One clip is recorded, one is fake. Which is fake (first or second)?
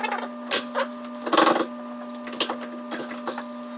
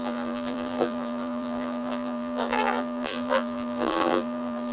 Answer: second